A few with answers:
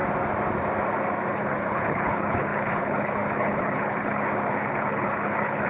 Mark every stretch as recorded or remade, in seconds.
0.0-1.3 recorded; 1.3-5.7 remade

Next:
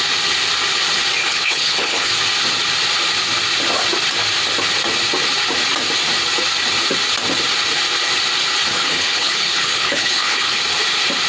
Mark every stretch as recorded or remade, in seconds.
0.0-1.2 recorded; 1.2-2.1 remade; 2.1-8.7 recorded; 8.7-10.6 remade; 10.6-11.3 recorded